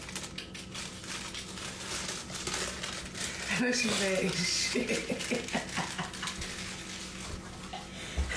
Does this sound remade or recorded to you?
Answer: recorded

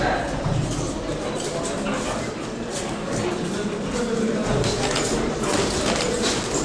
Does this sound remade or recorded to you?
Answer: recorded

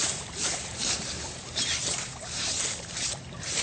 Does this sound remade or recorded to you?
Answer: remade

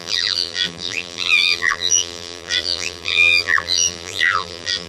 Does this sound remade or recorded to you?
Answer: remade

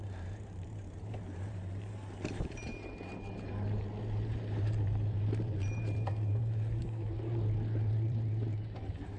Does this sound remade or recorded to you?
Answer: remade